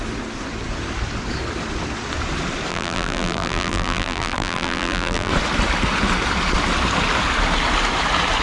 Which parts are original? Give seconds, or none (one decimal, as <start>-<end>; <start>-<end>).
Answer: 0.0-2.7; 5.3-8.4